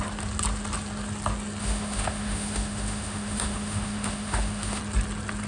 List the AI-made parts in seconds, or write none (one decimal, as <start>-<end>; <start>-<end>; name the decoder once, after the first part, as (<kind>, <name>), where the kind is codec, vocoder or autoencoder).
1.6-4.8 (autoencoder, DAC-VAE)